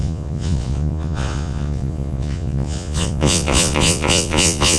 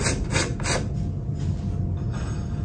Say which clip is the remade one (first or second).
first